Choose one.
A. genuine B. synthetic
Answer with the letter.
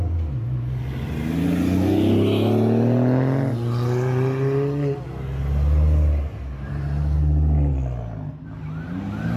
A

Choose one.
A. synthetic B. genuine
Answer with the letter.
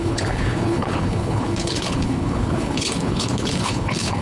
A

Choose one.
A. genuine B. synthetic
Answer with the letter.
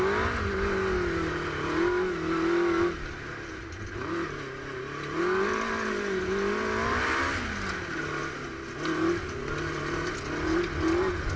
A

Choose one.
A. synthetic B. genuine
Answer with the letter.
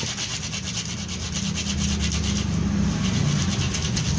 B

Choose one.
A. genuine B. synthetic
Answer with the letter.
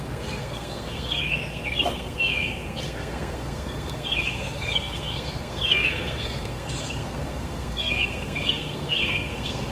B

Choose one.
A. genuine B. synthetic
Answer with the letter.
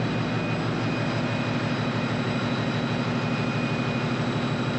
A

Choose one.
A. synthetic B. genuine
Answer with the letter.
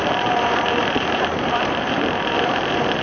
A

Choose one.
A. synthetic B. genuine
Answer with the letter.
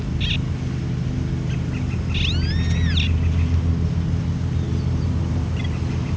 B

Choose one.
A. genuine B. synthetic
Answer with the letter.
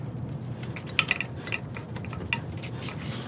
A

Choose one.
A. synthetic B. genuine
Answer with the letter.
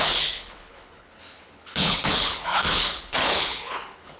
A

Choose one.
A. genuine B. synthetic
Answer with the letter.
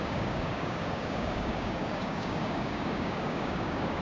B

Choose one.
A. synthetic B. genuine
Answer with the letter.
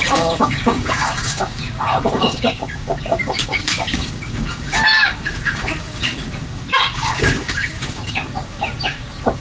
A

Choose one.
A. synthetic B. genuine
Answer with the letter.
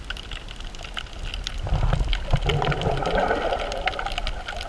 B